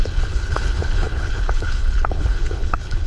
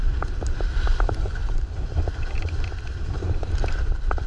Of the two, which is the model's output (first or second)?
first